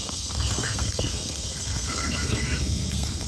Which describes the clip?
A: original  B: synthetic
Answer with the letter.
B